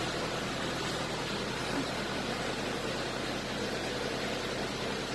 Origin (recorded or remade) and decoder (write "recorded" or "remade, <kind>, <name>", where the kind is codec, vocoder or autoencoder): recorded